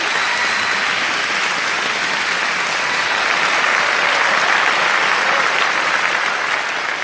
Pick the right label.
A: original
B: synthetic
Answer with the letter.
A